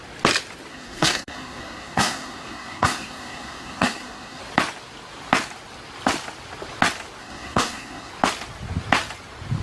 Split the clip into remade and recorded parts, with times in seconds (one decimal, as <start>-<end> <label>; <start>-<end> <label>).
0.0-0.7 recorded; 0.7-4.4 remade; 4.4-7.2 recorded; 7.2-8.1 remade; 8.1-9.6 recorded